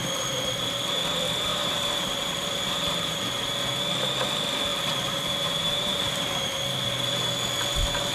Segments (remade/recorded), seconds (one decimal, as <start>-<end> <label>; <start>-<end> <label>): 0.0-1.5 recorded; 1.5-3.2 remade; 3.2-4.7 recorded; 4.7-6.6 remade; 6.6-8.1 recorded